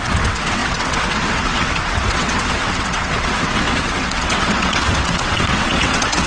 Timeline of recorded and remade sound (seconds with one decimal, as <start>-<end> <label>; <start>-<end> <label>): 0.0-6.3 remade